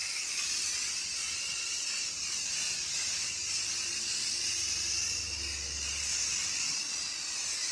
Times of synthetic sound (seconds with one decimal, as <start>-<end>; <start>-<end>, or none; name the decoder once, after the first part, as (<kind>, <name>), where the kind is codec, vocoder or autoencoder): none

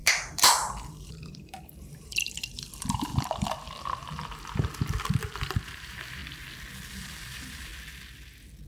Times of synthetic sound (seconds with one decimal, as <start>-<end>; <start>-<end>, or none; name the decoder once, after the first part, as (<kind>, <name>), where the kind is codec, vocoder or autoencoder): 0.0-3.1 (vocoder, BigVGAN v2); 5.2-6.2; 6.9-7.7

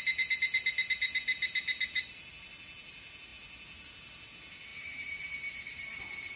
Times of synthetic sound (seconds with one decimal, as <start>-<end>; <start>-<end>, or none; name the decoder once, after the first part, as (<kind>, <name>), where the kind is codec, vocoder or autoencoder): 4.7-6.0 (vocoder, BigVGAN v2)

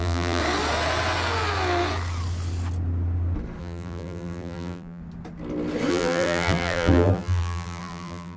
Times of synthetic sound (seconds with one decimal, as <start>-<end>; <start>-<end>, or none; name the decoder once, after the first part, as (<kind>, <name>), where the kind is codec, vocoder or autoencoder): 0.0-0.4 (vocoder, BigVGAN v2); 3.6-5.0; 5.9-8.4

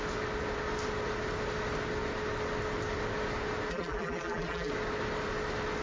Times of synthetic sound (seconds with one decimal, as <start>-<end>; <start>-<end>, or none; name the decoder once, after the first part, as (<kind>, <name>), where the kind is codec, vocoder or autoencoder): 3.7-4.7 (vocoder, BigVGAN v2)